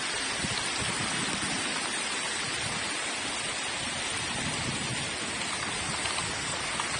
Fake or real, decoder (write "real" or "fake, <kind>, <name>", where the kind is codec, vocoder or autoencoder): fake, vocoder, BigVGAN v2